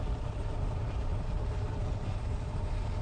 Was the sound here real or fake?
fake